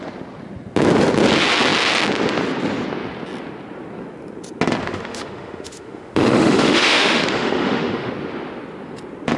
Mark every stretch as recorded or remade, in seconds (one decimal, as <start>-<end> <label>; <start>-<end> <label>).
0.0-4.8 recorded; 4.8-8.1 remade; 8.1-9.4 recorded